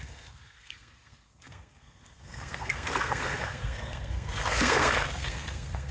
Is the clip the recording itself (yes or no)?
no